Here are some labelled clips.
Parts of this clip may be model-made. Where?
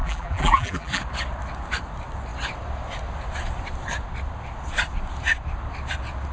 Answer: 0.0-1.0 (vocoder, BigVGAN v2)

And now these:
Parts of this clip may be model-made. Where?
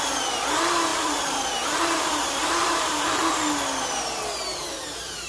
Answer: 0.9-3.3 (vocoder, BigVGAN v2); 4.5-5.3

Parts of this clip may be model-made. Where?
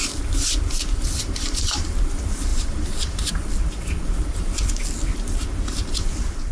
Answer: 1.2-1.9 (vocoder, BigVGAN v2); 2.5-3.3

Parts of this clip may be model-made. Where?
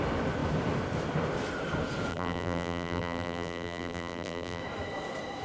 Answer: 2.1-4.6 (vocoder, BigVGAN v2)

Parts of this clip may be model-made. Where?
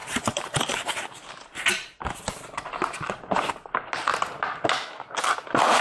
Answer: 0.0-3.5 (vocoder, BigVGAN v2)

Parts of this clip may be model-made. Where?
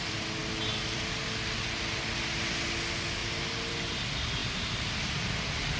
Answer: 0.4-1.0 (vocoder, BigVGAN v2); 3.2-3.9; 4.4-5.8